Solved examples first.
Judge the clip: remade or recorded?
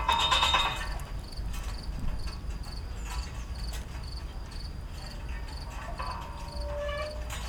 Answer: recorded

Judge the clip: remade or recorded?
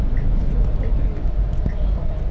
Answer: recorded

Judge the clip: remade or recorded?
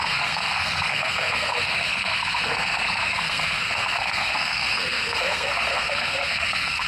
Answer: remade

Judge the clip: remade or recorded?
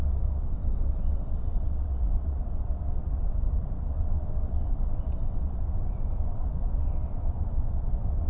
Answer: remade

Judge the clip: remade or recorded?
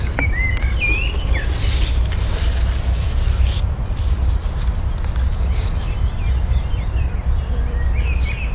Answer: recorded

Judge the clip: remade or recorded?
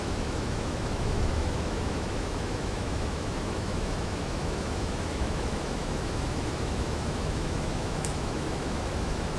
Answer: remade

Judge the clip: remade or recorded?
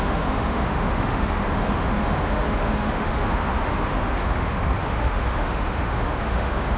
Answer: remade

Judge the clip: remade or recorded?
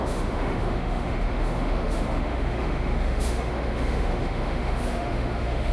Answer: remade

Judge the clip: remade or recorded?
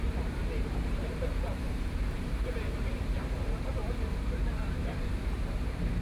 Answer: remade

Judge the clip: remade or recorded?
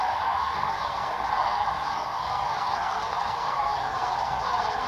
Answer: remade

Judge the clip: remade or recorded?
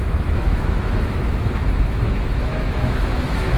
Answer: remade